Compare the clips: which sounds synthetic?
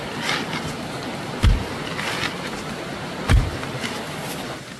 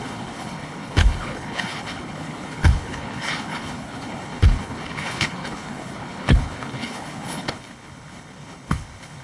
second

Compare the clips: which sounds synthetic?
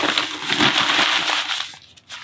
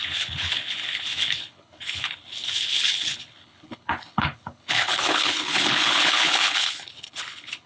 second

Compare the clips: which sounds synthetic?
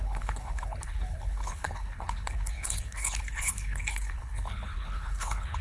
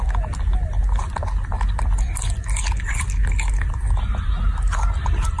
first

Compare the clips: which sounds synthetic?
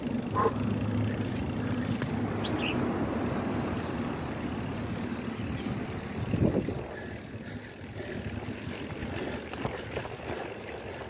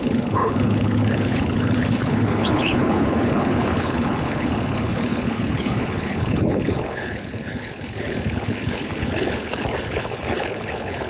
second